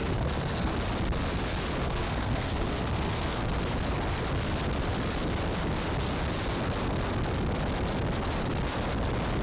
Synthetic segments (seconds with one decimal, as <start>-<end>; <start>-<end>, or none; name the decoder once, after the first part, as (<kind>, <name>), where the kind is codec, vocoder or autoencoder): 0.0-0.7 (codec, SNAC); 1.8-3.5